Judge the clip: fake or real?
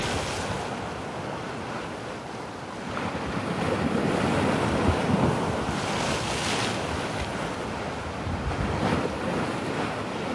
real